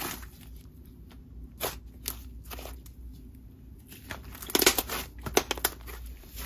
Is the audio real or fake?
real